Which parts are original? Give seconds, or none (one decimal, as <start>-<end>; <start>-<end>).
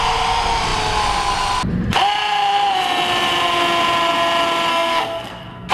0.0-4.7